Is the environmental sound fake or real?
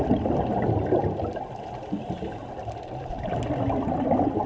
real